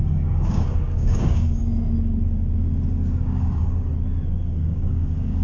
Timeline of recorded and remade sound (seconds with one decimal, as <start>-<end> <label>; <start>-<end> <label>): 0.0-1.6 remade; 1.6-3.2 recorded; 3.2-3.9 remade; 3.9-4.4 recorded; 4.4-5.4 remade